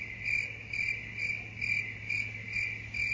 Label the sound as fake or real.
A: real